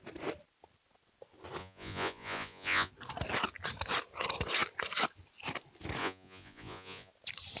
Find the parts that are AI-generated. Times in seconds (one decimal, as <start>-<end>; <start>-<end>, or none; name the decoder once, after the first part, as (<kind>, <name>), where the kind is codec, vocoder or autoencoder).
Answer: 1.6-2.9 (vocoder, Vocos); 6.0-7.1